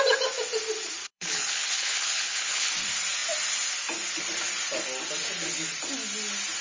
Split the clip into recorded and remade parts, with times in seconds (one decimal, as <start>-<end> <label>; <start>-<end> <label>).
0.0-1.0 recorded; 1.0-2.7 remade; 2.7-6.6 recorded